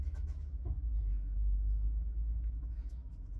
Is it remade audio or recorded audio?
remade